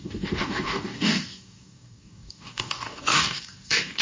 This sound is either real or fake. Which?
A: fake